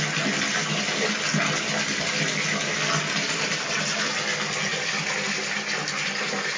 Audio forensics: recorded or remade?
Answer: recorded